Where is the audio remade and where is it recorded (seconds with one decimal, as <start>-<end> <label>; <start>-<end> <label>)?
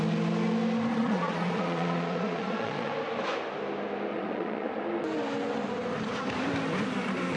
0.0-0.9 recorded; 0.9-2.9 remade; 2.9-4.1 recorded; 4.1-4.8 remade; 4.8-7.4 recorded